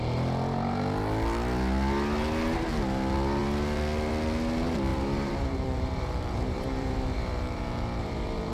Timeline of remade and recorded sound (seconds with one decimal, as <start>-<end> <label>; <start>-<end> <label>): 0.0-4.9 recorded; 4.9-8.5 remade